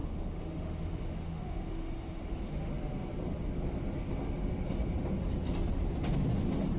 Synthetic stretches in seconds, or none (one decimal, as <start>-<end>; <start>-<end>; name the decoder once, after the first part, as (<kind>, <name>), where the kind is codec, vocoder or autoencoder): 0.0-2.7 (autoencoder, DAC-VAE)